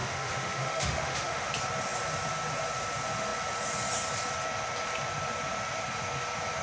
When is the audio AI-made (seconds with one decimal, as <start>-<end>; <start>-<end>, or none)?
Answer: 0.0-1.5